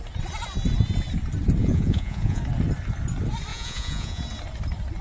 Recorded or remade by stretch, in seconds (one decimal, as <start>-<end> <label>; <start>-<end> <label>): 0.0-1.6 recorded; 1.6-2.4 remade; 2.4-3.5 recorded; 3.5-4.2 remade; 4.2-5.0 recorded

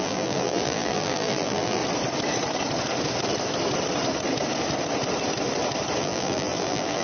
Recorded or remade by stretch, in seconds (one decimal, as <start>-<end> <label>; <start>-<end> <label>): 0.0-1.8 remade; 1.8-6.0 recorded; 6.0-7.0 remade